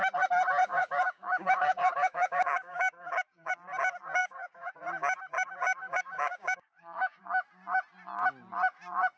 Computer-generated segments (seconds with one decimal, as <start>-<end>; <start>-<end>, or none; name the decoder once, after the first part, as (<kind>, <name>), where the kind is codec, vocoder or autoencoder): 0.6-3.5 (codec, DAC); 4.2-4.7; 5.8-7.2